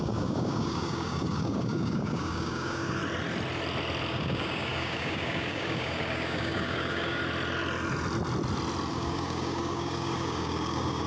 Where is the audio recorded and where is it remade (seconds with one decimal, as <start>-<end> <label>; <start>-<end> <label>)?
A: 0.0-3.0 remade; 3.0-4.1 recorded; 4.1-7.2 remade; 7.2-8.9 recorded; 8.9-11.1 remade